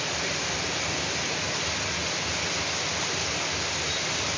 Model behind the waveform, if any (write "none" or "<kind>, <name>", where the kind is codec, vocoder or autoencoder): none